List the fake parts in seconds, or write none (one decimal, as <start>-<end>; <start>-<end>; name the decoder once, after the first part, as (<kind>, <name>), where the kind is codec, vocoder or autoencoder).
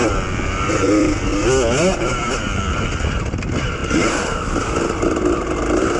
0.5-1.3 (vocoder, BigVGAN v2); 2.0-6.0